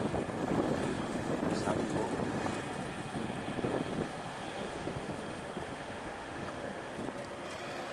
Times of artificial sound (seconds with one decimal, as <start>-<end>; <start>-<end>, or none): 0.9-1.4; 4.3-6.9